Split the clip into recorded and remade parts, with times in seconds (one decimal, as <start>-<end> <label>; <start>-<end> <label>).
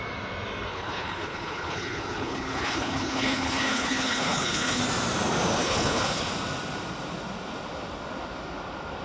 0.0-0.7 recorded; 0.7-4.8 remade; 4.8-5.6 recorded; 5.6-6.3 remade; 6.3-9.0 recorded